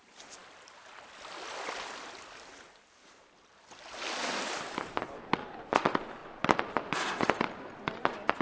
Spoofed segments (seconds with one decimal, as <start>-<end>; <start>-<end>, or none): none